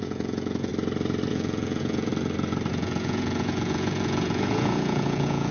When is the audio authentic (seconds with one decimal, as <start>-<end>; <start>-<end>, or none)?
0.7-1.3; 2.1-2.7